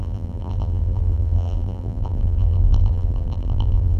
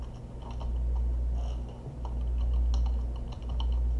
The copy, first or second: first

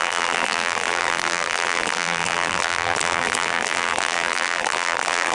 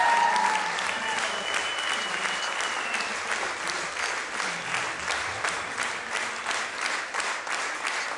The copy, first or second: first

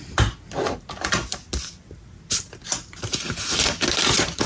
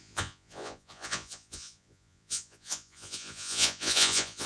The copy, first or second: second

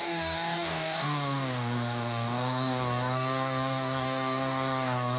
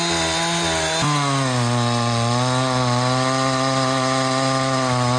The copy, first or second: first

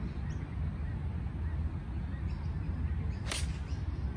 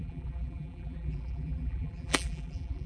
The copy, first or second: second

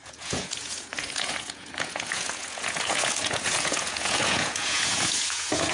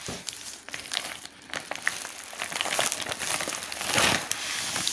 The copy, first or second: first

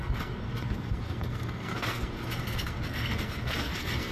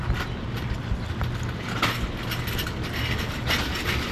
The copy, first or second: first